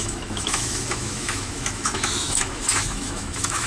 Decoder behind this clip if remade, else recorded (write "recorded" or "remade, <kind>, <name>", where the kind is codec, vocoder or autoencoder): remade, autoencoder, DAC-VAE